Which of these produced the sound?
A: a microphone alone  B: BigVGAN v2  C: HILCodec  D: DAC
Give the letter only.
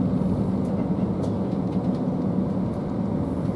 A